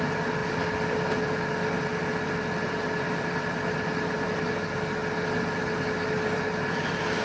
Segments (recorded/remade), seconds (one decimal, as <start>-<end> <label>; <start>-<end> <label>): 0.0-7.2 recorded